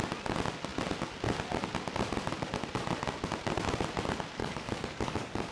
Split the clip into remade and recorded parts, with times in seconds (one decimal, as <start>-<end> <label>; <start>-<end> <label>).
0.0-4.4 recorded; 4.4-5.5 remade

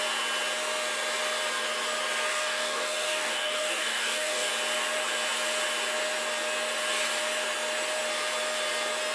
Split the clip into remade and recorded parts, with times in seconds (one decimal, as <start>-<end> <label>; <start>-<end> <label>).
0.0-2.3 recorded; 2.3-4.5 remade; 4.5-9.1 recorded

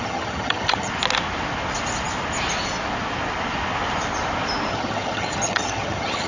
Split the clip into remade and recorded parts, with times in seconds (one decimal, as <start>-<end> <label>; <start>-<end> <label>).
0.0-0.9 remade; 0.9-4.7 recorded; 4.7-6.3 remade

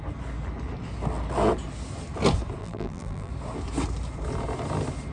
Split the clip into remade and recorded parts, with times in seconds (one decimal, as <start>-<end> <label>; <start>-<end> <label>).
0.0-2.6 recorded; 2.6-3.3 remade; 3.3-5.1 recorded

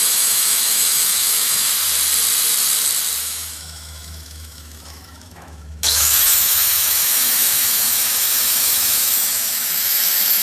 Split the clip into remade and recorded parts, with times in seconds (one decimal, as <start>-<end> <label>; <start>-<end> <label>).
0.0-1.7 remade; 1.7-3.2 recorded; 3.2-10.4 remade

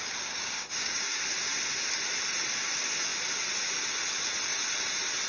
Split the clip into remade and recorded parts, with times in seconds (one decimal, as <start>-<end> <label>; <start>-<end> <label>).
0.0-1.2 remade; 1.2-5.3 recorded

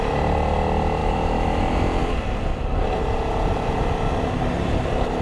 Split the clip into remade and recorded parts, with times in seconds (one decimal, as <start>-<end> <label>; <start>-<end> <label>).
0.0-1.0 recorded; 1.0-1.6 remade; 1.6-5.2 recorded

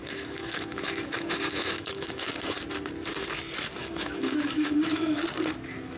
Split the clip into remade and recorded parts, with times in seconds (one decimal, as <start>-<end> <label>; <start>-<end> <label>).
0.0-2.4 remade; 2.4-3.8 recorded; 3.8-5.2 remade; 5.2-6.0 recorded